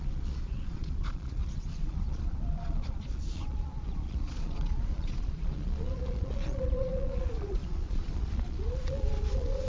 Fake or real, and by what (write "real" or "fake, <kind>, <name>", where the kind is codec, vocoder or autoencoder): fake, vocoder, Vocos